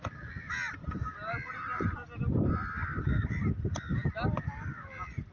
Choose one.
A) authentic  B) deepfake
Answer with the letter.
A